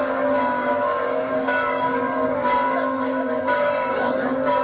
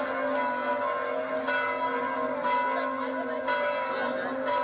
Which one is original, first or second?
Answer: second